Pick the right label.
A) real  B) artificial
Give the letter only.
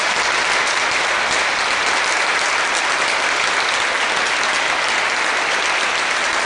A